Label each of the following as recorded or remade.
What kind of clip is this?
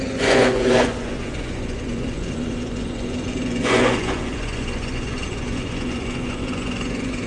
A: remade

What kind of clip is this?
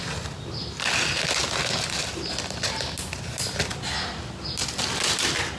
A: recorded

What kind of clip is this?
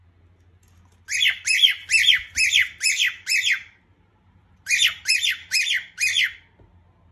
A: recorded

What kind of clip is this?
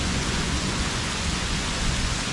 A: remade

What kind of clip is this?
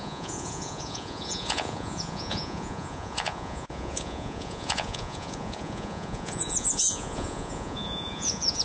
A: remade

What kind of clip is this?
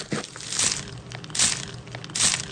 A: recorded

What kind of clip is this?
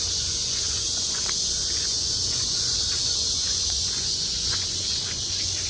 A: remade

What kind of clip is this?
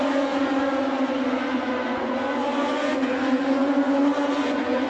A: remade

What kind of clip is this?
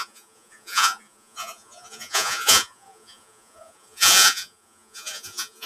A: remade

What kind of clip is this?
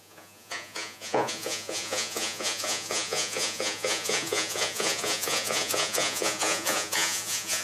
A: remade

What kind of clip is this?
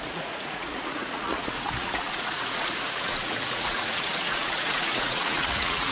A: remade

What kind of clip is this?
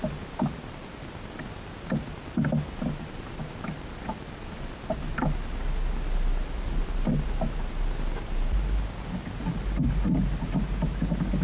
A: recorded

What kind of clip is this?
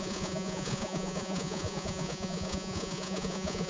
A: remade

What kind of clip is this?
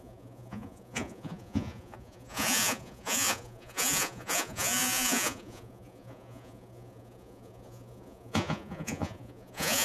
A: remade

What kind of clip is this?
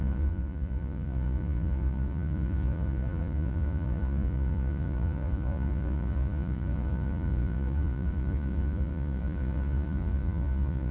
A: remade